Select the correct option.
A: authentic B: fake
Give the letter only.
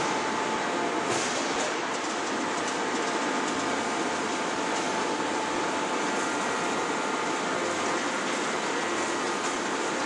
A